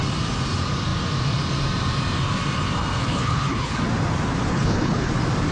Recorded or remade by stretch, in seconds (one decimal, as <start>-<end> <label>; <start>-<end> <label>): 0.0-3.0 recorded; 3.0-3.8 remade; 3.8-4.5 recorded; 4.5-5.1 remade; 5.1-5.5 recorded

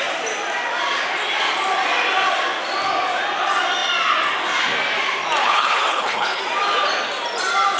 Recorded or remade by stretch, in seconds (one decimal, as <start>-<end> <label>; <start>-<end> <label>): 0.0-5.4 recorded; 5.4-6.4 remade; 6.4-7.8 recorded